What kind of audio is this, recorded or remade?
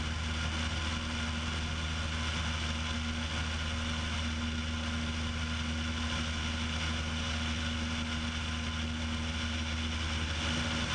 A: recorded